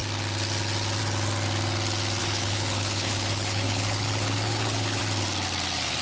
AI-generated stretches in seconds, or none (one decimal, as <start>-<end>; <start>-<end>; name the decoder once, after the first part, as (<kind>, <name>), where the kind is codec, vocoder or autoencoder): 2.2-5.0 (codec, HILCodec)